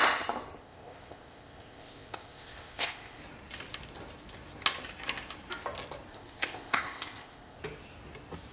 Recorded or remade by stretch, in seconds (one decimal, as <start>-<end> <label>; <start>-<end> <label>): 0.0-0.6 recorded; 0.6-3.2 remade; 3.2-6.1 recorded; 6.1-7.6 remade; 7.6-8.5 recorded